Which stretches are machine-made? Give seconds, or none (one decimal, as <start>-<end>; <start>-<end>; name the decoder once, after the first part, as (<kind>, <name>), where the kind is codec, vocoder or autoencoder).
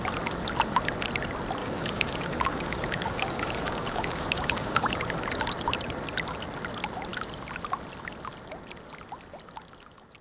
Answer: 1.6-5.0 (codec, DAC)